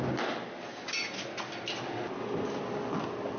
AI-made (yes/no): no